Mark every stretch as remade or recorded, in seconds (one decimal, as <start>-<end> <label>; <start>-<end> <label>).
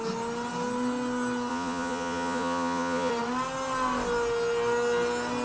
0.0-1.5 recorded; 1.5-3.1 remade; 3.1-5.4 recorded